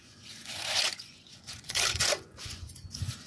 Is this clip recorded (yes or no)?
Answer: no